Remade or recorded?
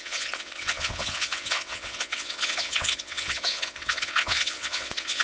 remade